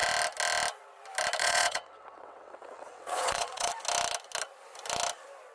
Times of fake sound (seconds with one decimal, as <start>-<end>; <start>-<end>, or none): 1.4-3.7